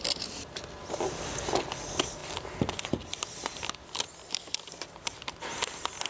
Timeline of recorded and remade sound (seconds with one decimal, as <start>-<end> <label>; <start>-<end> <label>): 0.0-6.1 recorded